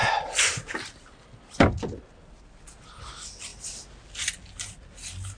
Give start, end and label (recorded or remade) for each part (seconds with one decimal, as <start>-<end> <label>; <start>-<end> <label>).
0.0-5.4 recorded